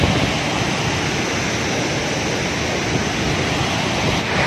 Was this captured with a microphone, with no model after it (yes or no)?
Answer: yes